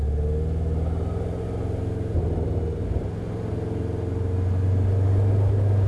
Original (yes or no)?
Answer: yes